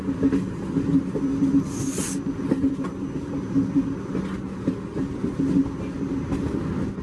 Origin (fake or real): real